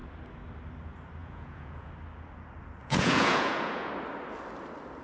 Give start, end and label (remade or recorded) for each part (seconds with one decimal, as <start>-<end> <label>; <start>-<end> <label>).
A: 0.0-1.2 recorded; 1.2-1.9 remade; 1.9-2.8 recorded; 2.8-3.9 remade; 3.9-5.0 recorded